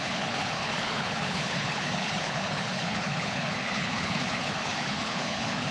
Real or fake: fake